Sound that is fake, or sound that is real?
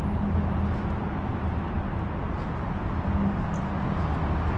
real